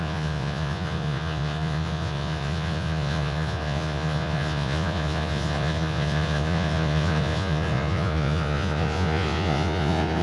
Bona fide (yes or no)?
no